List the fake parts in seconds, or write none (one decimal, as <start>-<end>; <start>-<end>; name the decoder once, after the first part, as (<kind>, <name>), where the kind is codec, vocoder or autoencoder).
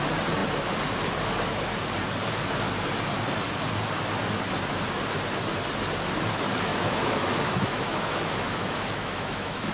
6.7-9.7 (autoencoder, DAC-VAE)